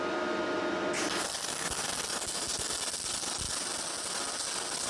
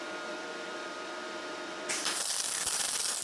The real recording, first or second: first